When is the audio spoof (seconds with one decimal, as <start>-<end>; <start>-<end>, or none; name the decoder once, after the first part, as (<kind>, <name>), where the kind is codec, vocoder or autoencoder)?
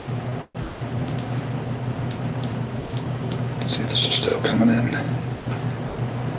2.8-3.4 (codec, DAC)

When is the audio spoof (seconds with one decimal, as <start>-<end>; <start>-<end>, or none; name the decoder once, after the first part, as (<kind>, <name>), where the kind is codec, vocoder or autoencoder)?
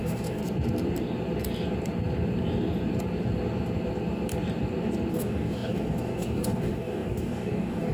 0.0-0.4 (codec, DAC); 5.1-7.9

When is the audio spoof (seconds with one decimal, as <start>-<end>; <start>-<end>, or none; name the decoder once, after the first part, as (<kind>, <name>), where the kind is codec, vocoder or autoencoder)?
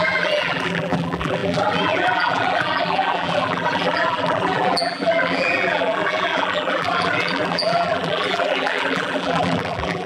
0.0-10.1 (vocoder, BigVGAN v2)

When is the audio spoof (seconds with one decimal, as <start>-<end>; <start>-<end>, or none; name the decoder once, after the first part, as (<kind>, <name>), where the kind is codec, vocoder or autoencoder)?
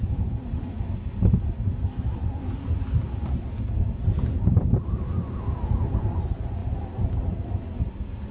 none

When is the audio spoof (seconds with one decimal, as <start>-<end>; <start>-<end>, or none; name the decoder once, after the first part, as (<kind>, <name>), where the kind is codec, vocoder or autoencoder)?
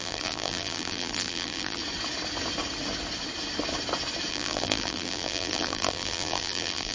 0.0-1.8 (vocoder, BigVGAN v2); 4.3-6.9